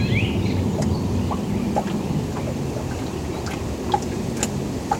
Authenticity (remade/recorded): recorded